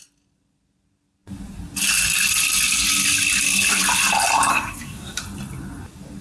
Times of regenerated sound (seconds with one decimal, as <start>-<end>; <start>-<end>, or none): 4.5-5.2